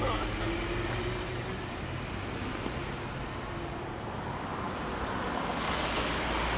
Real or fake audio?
real